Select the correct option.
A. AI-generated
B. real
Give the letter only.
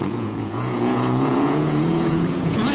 A